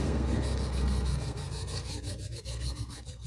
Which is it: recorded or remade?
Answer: remade